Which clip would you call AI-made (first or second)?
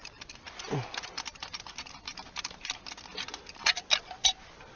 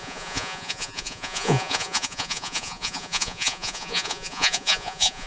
second